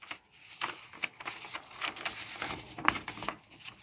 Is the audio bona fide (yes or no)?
yes